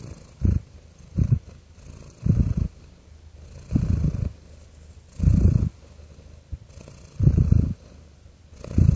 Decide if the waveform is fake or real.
real